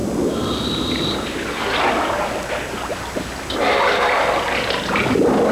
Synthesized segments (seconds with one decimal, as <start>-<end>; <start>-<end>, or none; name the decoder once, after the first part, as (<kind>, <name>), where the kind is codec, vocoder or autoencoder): none

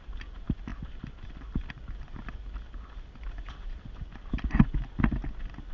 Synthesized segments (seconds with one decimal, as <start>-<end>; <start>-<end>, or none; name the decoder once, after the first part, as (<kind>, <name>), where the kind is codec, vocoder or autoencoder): none

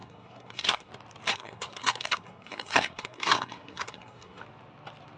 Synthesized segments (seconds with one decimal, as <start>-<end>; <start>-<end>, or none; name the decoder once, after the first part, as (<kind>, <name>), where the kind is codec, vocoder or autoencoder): 0.0-0.9 (codec, SNAC); 1.3-4.4

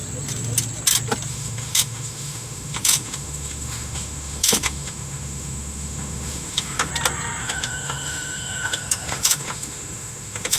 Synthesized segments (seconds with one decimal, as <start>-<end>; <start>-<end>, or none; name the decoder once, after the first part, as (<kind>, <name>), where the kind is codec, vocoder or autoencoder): 1.3-6.9 (autoencoder, DAC-VAE); 7.4-10.6

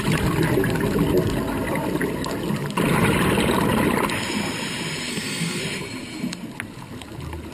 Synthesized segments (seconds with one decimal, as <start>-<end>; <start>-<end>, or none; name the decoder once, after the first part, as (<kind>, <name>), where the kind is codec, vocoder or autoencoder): 5.1-5.6 (codec, SNAC)

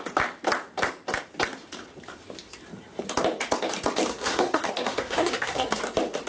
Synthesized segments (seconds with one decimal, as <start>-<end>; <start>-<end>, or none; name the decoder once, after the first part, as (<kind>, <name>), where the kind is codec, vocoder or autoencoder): 4.1-5.8 (codec, SNAC)

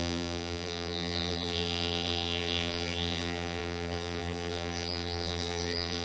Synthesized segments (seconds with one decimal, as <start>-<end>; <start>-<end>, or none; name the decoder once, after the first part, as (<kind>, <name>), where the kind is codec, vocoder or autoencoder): 0.0-6.0 (vocoder, BigVGAN v2)

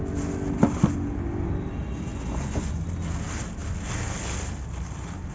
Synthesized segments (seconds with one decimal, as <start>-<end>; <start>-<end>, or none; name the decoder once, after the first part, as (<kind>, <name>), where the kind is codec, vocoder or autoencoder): 2.1-2.8 (vocoder, Vocos)